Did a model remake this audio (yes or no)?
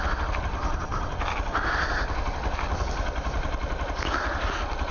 no